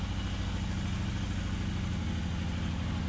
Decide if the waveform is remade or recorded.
recorded